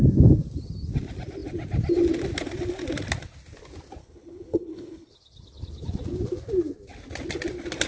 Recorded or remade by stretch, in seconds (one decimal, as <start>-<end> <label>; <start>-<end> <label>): 0.0-4.0 recorded; 4.0-5.1 remade; 5.1-7.9 recorded